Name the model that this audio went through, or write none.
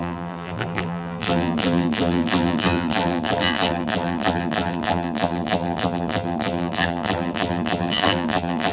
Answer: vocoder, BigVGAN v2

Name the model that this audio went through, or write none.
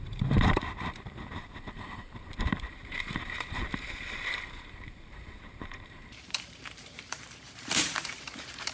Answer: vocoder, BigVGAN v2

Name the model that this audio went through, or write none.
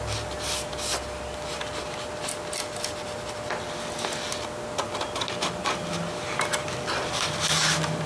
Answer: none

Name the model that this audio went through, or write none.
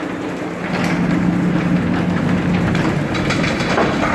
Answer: vocoder, BigVGAN v2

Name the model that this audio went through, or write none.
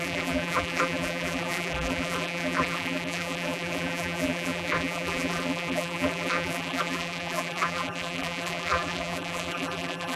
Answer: vocoder, BigVGAN v2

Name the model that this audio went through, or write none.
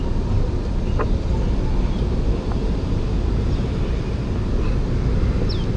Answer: none